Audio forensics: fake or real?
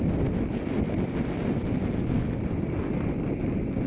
real